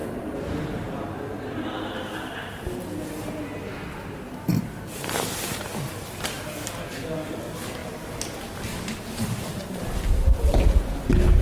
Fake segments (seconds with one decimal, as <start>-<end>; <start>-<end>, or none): 0.0-0.6; 3.7-4.3; 7.8-9.8